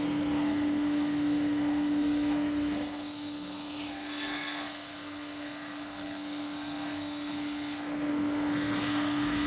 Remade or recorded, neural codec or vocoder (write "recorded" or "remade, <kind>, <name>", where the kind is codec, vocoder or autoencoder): remade, codec, SNAC